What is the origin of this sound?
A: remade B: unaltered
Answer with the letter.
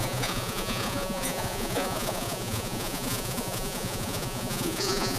A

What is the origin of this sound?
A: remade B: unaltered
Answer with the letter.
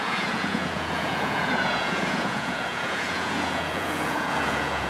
A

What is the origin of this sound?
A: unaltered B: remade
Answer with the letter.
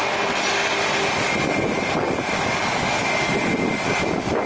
A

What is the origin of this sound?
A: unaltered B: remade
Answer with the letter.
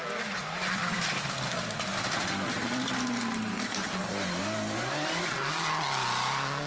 A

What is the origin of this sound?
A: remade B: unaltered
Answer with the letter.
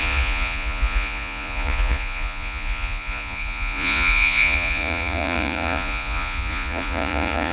A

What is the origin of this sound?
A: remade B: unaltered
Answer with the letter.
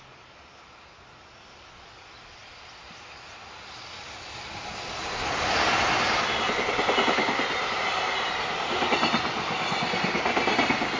B